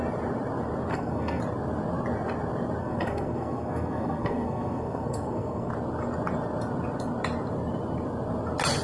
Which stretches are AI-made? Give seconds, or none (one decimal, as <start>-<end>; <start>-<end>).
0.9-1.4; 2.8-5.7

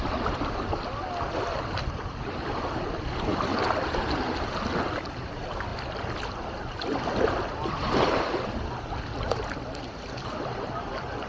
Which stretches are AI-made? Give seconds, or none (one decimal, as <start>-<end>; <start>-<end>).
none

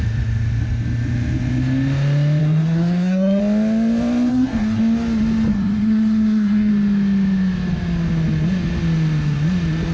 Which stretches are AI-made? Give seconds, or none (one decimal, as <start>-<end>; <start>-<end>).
2.4-3.4; 4.3-4.8; 5.5-6.7

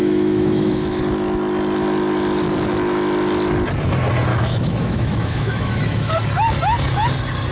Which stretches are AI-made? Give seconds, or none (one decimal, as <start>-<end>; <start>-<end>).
0.0-1.0; 4.3-6.1